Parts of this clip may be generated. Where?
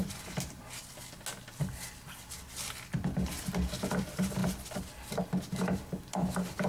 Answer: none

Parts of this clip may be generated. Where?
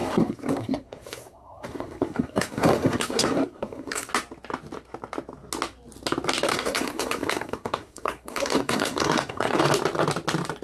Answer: 0.0-4.1 (codec, SNAC); 6.5-9.6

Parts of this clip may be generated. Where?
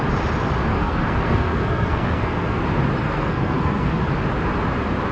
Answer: 0.7-2.6 (codec, SNAC); 3.0-4.0